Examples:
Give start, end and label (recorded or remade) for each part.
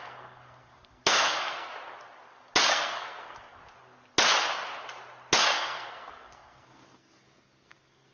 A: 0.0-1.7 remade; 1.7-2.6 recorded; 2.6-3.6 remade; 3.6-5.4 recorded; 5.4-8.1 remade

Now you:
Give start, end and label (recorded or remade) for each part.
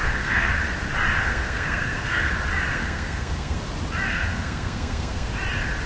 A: 0.0-0.5 remade; 0.5-1.2 recorded; 1.2-2.3 remade; 2.3-2.7 recorded; 2.7-3.6 remade; 3.6-4.1 recorded; 4.1-5.3 remade; 5.3-5.9 recorded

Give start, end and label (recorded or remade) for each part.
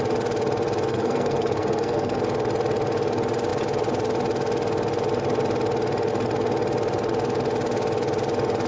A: 0.0-0.9 recorded; 0.9-2.2 remade; 2.2-8.7 recorded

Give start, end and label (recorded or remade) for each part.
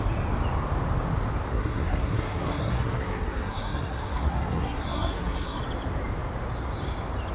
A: 0.0-1.5 recorded; 1.5-5.6 remade; 5.6-7.3 recorded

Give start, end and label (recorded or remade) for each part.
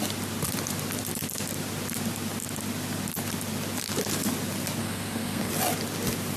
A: 0.0-4.8 recorded; 4.8-5.5 remade; 5.5-6.4 recorded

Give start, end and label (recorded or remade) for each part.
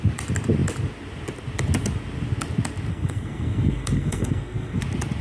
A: 0.0-2.9 recorded; 2.9-4.8 remade; 4.8-5.2 recorded